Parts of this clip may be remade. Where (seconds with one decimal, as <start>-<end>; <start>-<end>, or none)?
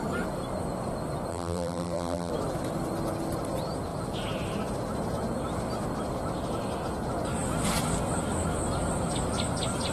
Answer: 1.3-2.3